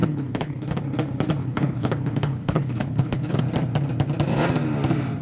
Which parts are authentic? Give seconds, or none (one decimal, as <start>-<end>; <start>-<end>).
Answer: 0.8-1.4; 3.4-5.2